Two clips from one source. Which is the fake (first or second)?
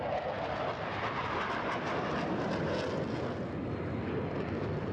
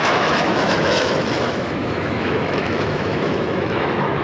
second